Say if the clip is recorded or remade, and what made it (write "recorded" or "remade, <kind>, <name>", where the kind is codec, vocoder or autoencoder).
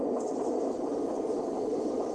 recorded